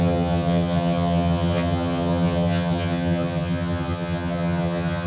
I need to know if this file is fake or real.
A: fake